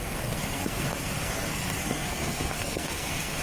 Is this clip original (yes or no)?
no